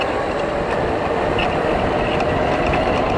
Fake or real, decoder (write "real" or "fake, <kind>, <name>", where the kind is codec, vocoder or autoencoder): real